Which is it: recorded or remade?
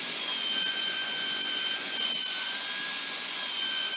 remade